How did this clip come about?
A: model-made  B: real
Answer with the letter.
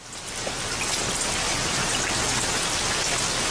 B